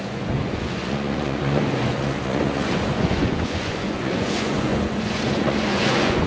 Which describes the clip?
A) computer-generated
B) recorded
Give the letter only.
A